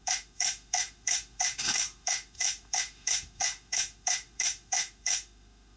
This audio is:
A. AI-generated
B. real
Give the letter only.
A